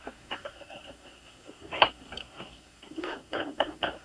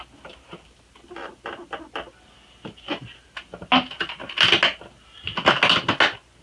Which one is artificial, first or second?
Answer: first